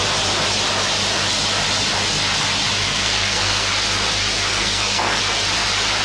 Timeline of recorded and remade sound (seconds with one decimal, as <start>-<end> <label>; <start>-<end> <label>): 0.0-2.8 recorded; 2.8-3.7 remade; 3.7-4.5 recorded; 4.5-5.2 remade; 5.2-6.0 recorded